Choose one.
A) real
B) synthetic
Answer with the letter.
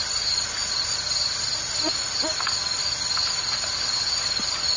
A